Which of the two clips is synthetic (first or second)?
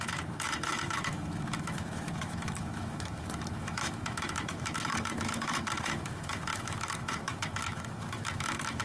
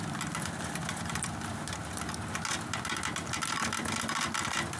first